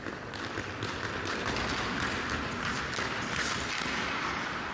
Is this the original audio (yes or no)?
yes